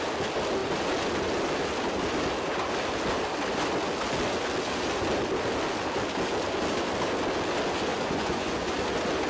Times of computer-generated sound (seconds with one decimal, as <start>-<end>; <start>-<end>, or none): 7.9-8.7